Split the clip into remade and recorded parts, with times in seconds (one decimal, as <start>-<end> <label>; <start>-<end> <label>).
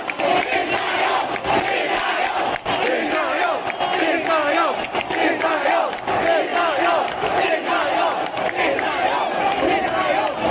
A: 0.0-10.5 recorded